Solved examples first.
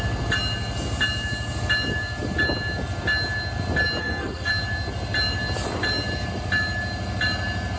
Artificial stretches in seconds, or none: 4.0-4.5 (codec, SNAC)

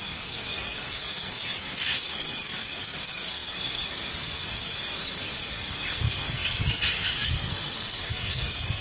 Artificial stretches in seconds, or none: 0.0-8.8 (codec, SNAC)

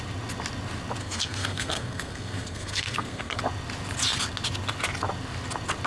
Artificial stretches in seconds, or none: 1.0-3.4 (codec, SNAC)

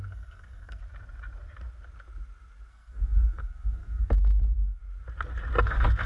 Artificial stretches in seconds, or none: 0.0-0.8 (codec, SNAC); 2.7-4.8; 5.6-6.1

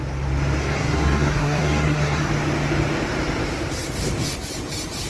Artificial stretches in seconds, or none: 0.6-2.3 (codec, SNAC)

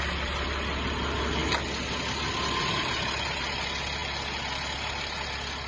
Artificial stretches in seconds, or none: none

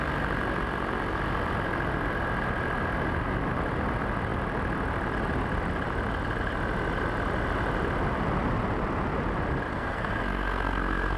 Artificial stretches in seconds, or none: 9.7-11.2 (codec, SNAC)

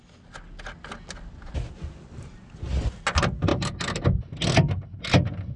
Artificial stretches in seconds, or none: none